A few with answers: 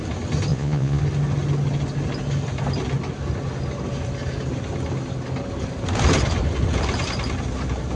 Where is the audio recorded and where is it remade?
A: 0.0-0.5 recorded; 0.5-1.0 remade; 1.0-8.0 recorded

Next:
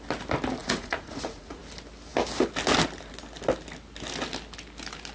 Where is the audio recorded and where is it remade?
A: 0.0-0.6 recorded; 0.6-1.6 remade; 1.6-5.1 recorded

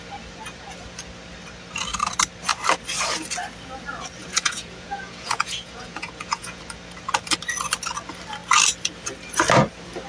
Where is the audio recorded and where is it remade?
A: 0.0-4.2 recorded; 4.2-6.6 remade; 6.6-10.1 recorded

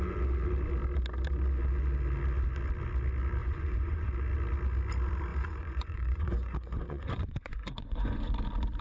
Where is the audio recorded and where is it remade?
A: 0.0-3.4 recorded; 3.4-4.1 remade; 4.1-5.3 recorded; 5.3-8.3 remade; 8.3-8.8 recorded

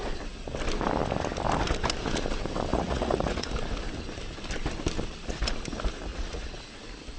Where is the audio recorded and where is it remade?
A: 0.0-2.7 recorded; 2.7-3.5 remade; 3.5-6.1 recorded; 6.1-6.7 remade; 6.7-7.2 recorded